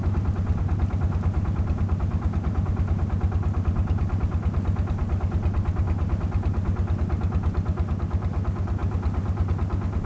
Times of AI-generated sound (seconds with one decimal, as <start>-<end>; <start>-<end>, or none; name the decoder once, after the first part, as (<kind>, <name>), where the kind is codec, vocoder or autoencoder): none